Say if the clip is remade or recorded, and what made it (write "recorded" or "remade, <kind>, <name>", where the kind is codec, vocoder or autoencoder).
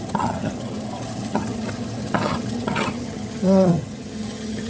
remade, vocoder, HiFi-GAN